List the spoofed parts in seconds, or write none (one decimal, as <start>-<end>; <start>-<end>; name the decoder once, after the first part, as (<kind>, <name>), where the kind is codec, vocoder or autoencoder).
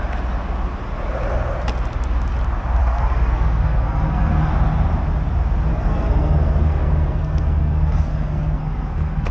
2.8-4.5 (codec, SNAC); 5.7-9.3